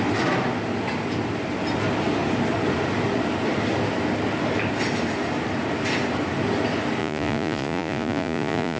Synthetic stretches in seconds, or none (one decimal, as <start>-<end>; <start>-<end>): 7.0-8.8